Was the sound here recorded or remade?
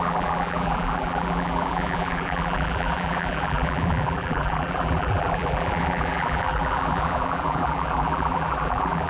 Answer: remade